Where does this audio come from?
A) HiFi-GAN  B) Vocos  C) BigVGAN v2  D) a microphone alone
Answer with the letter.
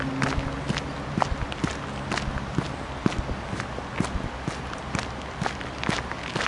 D